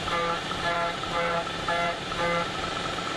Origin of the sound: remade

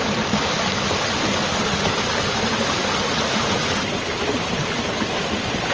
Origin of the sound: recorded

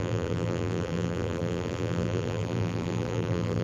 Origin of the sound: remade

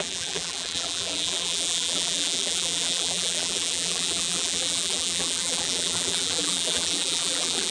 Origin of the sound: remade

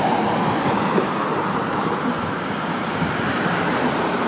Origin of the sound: remade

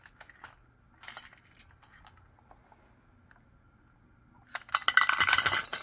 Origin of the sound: recorded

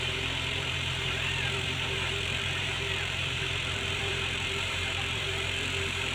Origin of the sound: remade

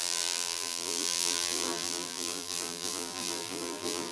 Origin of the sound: remade